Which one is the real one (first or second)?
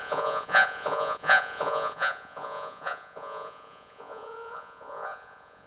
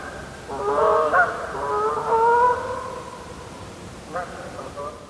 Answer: second